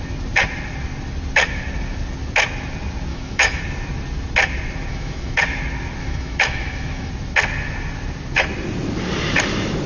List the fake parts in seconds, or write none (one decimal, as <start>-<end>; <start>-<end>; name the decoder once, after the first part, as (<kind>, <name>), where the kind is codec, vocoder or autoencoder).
3.1-3.6 (autoencoder, DAC-VAE); 4.9-5.4; 6.0-7.1